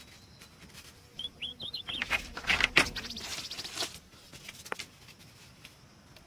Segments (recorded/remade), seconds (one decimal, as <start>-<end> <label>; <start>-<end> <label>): 0.0-6.3 recorded